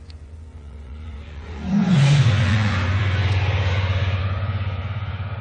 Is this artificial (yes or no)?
yes